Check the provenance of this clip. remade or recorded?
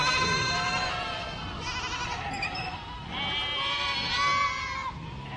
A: recorded